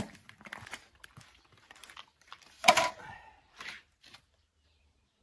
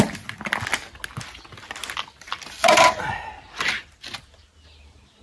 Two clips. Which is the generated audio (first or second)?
first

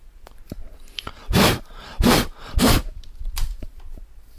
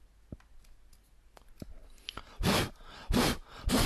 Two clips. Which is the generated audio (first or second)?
first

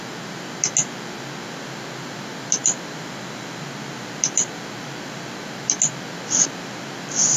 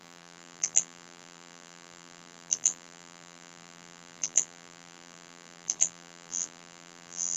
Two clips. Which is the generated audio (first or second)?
second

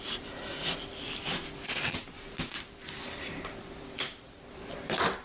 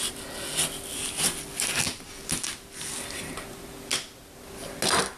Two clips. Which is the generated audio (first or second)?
first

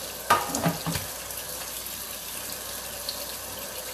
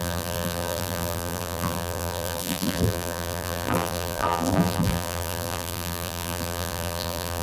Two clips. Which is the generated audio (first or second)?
second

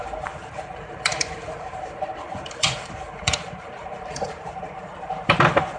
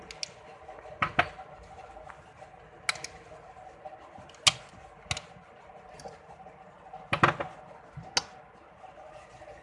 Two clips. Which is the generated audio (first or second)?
first